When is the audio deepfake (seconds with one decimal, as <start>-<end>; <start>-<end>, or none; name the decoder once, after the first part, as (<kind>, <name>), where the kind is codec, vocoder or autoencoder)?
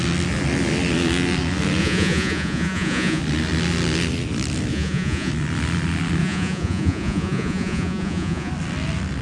1.8-3.2 (vocoder, Vocos); 4.7-5.3; 6.2-8.5